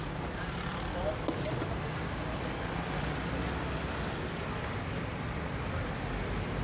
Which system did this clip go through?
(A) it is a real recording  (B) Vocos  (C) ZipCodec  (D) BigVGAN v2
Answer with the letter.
A